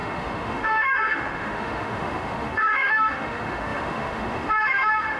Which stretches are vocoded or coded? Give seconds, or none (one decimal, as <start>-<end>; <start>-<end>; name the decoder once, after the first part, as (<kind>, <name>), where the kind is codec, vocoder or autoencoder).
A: 0.0-5.2 (autoencoder, DAC-VAE)